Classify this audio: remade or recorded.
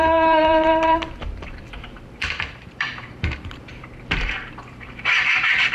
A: remade